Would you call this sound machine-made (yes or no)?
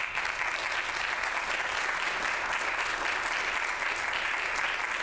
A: no